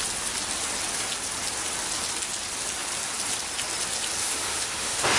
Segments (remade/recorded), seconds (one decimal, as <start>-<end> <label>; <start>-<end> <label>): 0.0-4.2 recorded; 4.2-5.2 remade